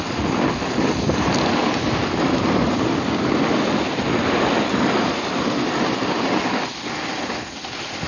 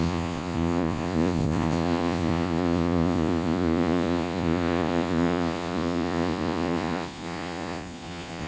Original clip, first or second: first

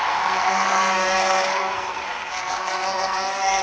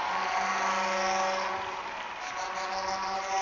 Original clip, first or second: second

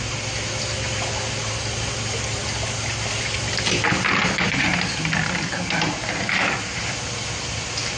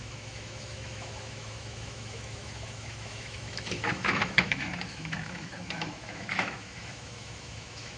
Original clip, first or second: first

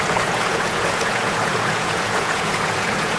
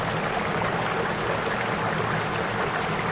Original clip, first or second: second